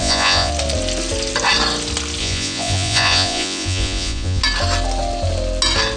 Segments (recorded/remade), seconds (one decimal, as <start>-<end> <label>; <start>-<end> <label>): 0.0-0.5 remade; 0.5-2.2 recorded; 2.2-4.4 remade; 4.4-6.0 recorded